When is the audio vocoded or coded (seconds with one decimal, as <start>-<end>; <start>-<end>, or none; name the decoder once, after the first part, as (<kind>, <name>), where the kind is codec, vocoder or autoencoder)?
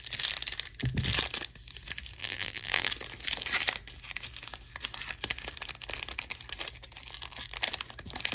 2.2-2.9 (vocoder, BigVGAN v2)